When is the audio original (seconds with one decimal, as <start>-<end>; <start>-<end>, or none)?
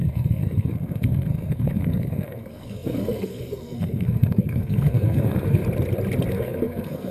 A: 5.6-6.3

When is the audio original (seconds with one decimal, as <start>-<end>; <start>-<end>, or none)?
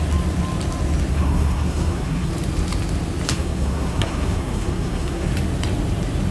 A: 0.0-1.1; 2.3-3.3; 5.3-6.3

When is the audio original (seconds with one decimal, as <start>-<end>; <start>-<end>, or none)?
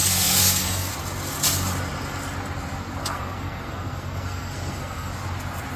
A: 0.9-3.0; 5.1-5.8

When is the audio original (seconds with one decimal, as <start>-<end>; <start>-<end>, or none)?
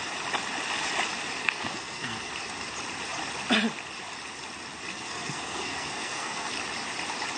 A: 0.0-1.4; 2.3-4.9; 6.5-7.4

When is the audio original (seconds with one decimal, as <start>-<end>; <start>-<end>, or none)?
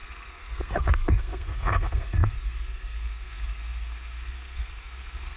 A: none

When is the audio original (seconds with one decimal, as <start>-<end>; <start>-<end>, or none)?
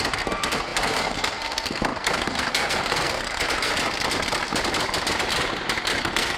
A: 3.7-6.0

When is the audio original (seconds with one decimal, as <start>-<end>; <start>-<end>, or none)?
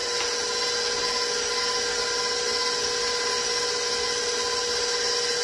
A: 0.0-5.4